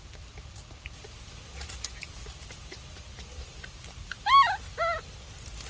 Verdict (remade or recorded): recorded